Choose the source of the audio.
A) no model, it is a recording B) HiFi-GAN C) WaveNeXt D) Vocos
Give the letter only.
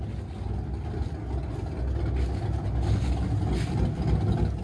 A